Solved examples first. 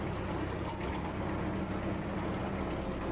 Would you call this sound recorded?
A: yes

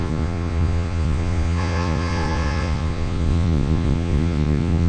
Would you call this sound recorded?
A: no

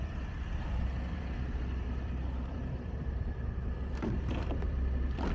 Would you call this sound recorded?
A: no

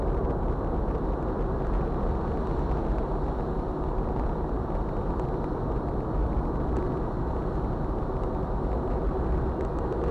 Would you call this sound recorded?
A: yes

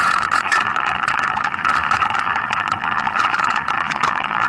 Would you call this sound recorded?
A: no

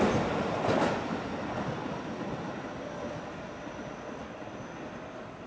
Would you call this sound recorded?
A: yes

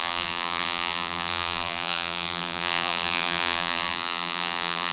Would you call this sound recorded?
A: no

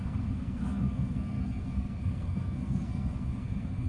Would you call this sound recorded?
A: no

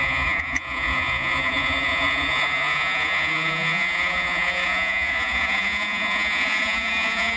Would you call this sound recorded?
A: no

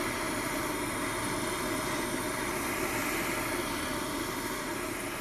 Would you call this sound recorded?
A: no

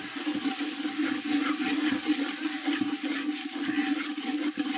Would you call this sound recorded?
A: yes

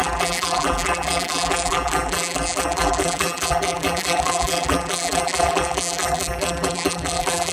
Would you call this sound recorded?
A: no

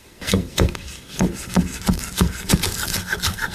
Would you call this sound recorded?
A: no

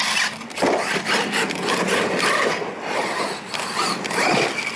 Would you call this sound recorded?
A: yes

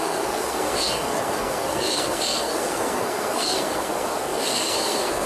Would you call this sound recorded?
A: no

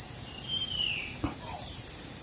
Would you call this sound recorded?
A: no